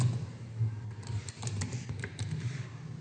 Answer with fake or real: real